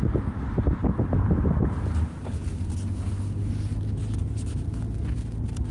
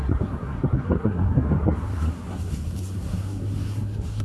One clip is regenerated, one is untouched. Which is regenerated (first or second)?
second